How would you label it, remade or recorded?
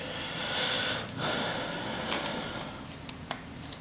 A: recorded